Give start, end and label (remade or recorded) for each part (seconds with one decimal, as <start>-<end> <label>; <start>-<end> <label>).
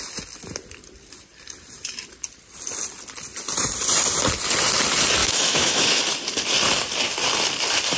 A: 0.0-5.2 recorded; 5.2-6.0 remade; 6.0-8.0 recorded